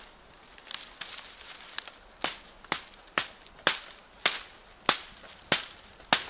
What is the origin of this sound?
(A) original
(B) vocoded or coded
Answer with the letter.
A